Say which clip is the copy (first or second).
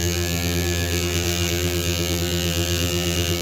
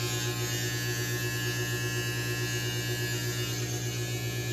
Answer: first